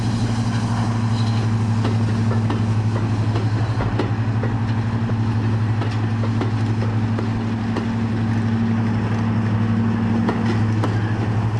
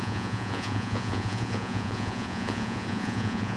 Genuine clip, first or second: first